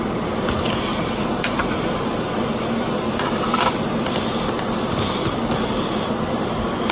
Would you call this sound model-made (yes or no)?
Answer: no